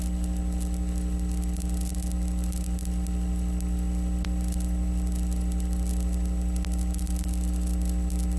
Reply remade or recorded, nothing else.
recorded